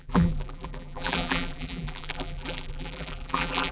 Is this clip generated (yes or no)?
yes